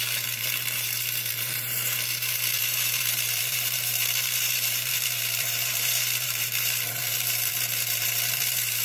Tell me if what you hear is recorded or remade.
remade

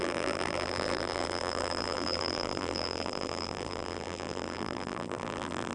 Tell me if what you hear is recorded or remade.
remade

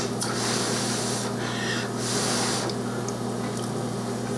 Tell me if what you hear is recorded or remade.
recorded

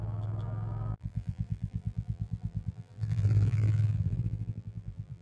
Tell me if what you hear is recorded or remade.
remade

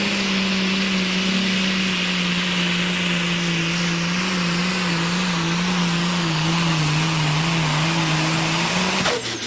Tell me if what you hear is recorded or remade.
recorded